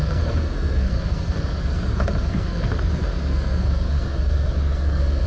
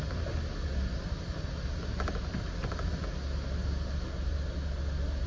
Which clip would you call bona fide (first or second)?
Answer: second